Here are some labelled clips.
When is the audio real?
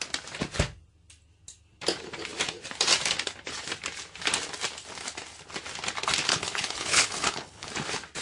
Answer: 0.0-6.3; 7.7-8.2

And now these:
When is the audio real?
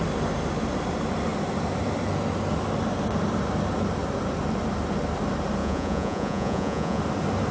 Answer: 0.0-5.6; 7.0-7.5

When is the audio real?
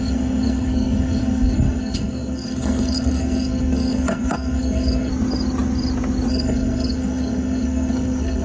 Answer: 5.1-6.3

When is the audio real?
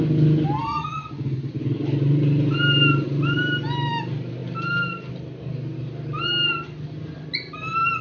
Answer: 0.0-0.6; 1.5-8.0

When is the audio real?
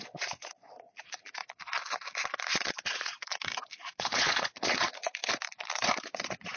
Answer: 1.4-2.7; 3.3-3.9; 5.2-6.0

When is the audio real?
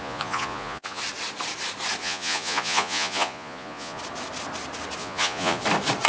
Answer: 1.0-2.0; 4.0-5.0; 5.6-6.1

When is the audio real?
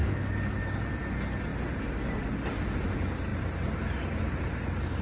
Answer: 0.0-5.0